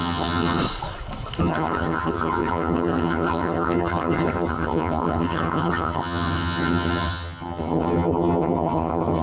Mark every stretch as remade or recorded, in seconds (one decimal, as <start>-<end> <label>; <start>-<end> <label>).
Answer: 0.0-0.6 remade; 0.6-1.4 recorded; 1.4-9.2 remade